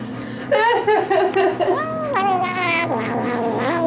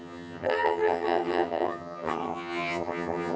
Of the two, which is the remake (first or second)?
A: second